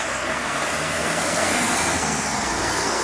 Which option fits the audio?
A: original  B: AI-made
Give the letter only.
B